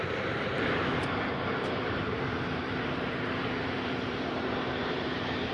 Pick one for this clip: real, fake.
fake